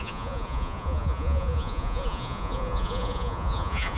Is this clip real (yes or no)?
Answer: no